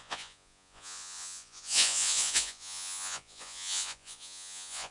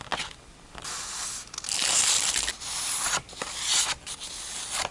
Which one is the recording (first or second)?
second